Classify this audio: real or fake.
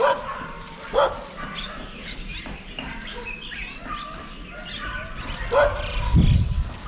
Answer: real